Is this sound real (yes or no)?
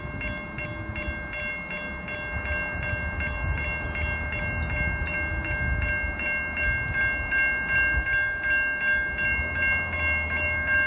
yes